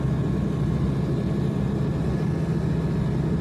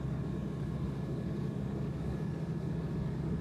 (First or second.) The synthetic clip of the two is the second